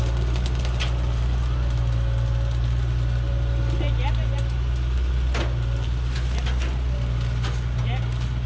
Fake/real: real